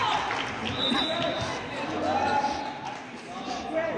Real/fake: real